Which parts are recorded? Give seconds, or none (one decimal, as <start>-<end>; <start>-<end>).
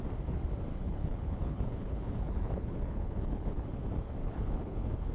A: 0.0-0.7; 3.8-4.2